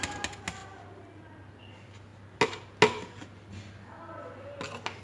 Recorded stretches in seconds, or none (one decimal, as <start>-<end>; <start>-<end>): 0.0-5.0